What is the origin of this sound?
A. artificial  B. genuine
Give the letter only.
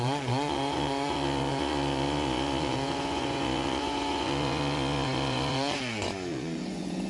A